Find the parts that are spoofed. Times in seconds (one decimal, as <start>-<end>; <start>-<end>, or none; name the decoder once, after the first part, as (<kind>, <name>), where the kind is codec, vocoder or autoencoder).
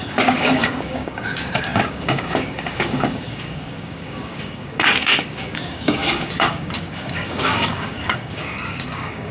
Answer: 0.0-9.3 (codec, DAC)